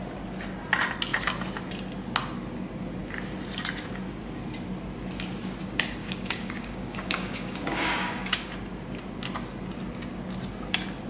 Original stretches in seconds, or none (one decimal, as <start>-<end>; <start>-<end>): 0.0-6.0; 8.5-11.1